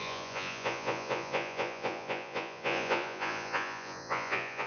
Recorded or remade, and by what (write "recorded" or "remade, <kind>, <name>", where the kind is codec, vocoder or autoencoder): remade, vocoder, Vocos